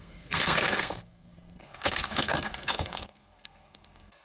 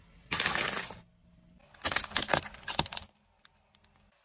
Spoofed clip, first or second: first